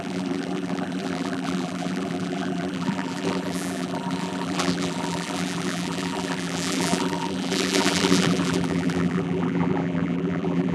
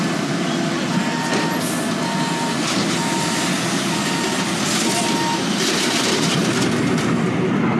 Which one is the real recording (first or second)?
second